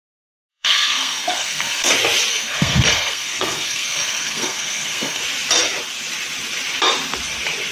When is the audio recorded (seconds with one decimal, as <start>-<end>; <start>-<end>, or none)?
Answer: 0.0-0.5; 1.9-2.3; 5.2-7.7